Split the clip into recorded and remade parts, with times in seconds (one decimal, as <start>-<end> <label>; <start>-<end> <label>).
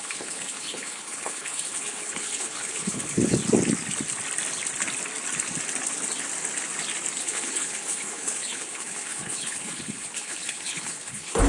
0.0-3.4 remade; 3.4-7.2 recorded; 7.2-11.5 remade